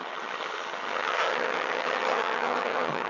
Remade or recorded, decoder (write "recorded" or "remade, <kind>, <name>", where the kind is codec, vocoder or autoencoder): remade, vocoder, HiFi-GAN